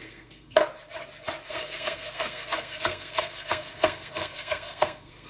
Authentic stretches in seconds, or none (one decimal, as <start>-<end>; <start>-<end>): 0.6-1.5